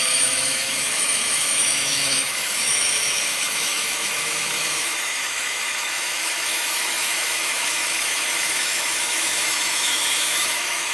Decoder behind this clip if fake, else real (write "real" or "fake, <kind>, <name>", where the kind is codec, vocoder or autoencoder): fake, autoencoder, DAC-VAE